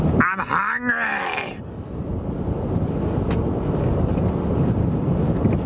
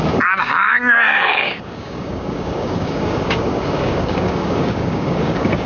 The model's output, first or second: second